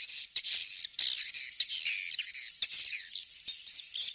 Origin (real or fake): real